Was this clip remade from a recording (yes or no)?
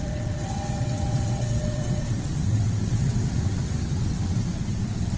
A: yes